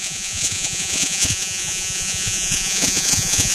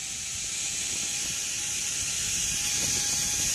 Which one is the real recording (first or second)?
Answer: second